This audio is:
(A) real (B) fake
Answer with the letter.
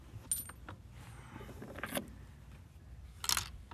A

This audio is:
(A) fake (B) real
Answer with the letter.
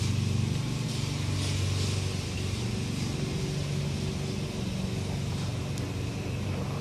B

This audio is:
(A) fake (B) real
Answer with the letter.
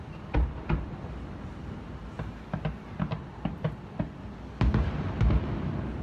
B